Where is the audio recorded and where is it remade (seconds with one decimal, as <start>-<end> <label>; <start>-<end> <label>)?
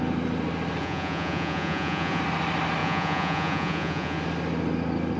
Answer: 0.0-0.8 recorded; 0.8-2.2 remade; 2.2-2.8 recorded; 2.8-4.2 remade; 4.2-5.2 recorded